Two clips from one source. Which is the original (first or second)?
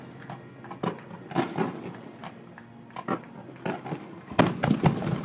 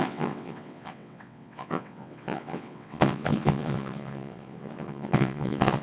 first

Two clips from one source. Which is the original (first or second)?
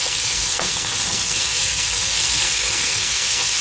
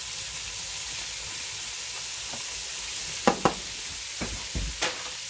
second